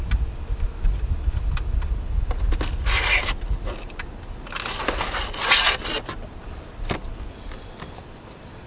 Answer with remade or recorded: recorded